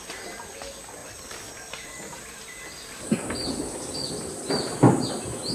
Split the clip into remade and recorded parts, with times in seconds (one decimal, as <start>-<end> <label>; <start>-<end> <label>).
0.0-5.5 recorded